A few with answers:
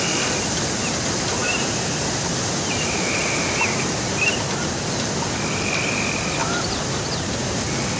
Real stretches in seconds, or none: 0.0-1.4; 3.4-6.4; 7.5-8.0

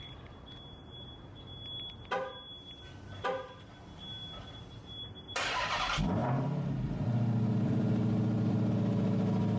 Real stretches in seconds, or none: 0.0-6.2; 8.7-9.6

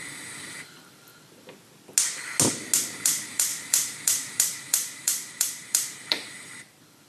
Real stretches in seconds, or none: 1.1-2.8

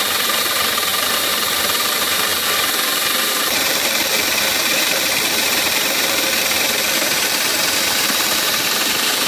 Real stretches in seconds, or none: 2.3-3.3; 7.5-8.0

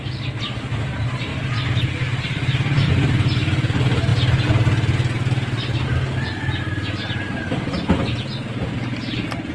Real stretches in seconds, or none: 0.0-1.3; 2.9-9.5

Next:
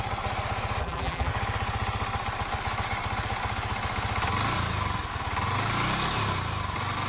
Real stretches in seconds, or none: 0.0-0.8; 1.3-7.1

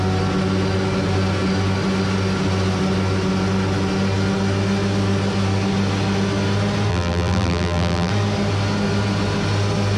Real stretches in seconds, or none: 0.0-6.9; 8.1-10.0